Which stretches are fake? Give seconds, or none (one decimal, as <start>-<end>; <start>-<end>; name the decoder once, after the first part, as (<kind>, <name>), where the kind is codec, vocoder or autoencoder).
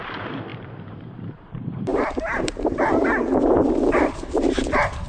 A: 0.0-5.1 (vocoder, BigVGAN v2)